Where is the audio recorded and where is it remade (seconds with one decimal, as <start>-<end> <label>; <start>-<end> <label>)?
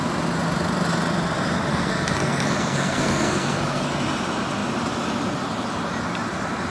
0.0-1.7 recorded; 1.7-3.9 remade; 3.9-6.7 recorded